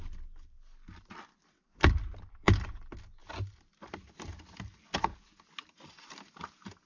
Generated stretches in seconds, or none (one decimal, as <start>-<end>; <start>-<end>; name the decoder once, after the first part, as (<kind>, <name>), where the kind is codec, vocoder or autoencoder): none